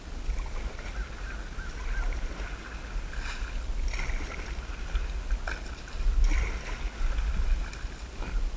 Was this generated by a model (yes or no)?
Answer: no